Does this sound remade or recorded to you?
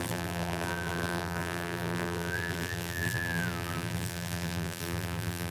remade